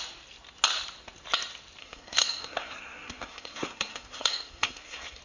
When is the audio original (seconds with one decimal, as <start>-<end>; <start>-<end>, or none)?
0.0-1.8